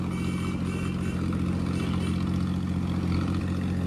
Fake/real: real